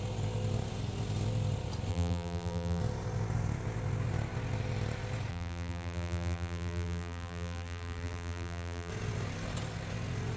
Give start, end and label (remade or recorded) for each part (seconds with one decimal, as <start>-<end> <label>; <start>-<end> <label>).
0.0-1.9 recorded; 1.9-2.8 remade; 2.8-5.3 recorded; 5.3-8.9 remade; 8.9-10.4 recorded